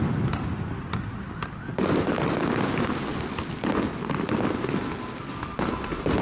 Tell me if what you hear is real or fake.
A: real